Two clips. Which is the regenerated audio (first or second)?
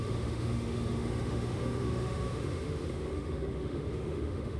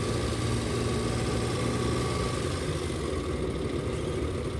first